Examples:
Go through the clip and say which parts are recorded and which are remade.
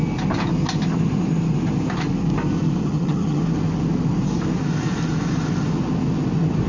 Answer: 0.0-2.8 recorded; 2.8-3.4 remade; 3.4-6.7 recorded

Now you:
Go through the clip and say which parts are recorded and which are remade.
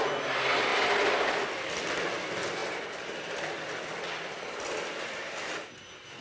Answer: 0.0-6.2 recorded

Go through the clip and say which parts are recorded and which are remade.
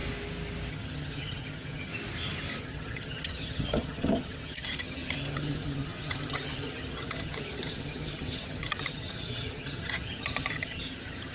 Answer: 0.0-0.7 recorded; 0.7-1.9 remade; 1.9-2.6 recorded; 2.6-11.3 remade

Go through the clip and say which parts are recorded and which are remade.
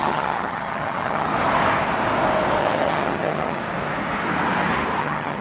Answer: 0.0-1.3 remade; 1.3-2.6 recorded; 2.6-3.6 remade; 3.6-5.0 recorded; 5.0-5.4 remade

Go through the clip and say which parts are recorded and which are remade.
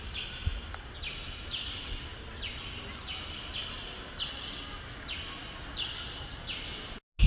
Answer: 0.0-7.3 recorded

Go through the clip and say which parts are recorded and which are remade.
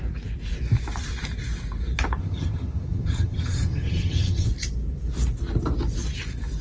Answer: 0.0-2.2 recorded; 2.2-4.5 remade; 4.5-6.6 recorded